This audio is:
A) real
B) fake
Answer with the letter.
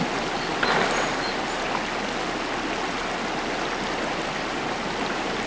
A